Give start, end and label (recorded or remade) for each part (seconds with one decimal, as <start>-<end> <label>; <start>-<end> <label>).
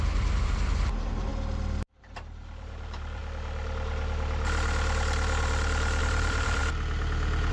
0.0-1.3 remade; 1.3-2.0 recorded; 2.0-3.2 remade; 3.2-6.0 recorded; 6.0-6.6 remade; 6.6-7.5 recorded